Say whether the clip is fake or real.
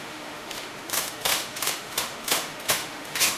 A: fake